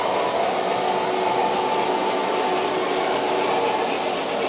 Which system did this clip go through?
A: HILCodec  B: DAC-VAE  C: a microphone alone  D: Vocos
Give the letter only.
C